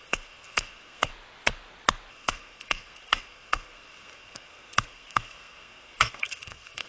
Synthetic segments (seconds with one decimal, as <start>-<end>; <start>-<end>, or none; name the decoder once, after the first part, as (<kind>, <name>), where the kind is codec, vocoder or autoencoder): 0.0-1.1 (codec, SNAC); 2.1-6.9